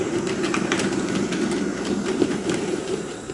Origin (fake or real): fake